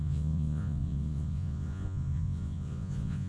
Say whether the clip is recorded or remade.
remade